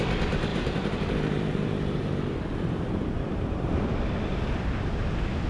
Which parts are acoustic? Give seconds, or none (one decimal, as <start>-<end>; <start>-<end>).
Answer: 0.0-0.5; 3.8-4.3; 5.0-5.5